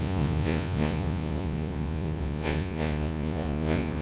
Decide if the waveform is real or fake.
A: fake